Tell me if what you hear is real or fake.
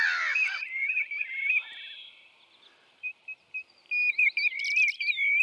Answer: real